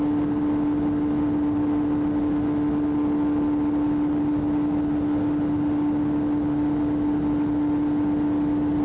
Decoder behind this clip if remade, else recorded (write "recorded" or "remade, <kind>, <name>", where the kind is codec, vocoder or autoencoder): recorded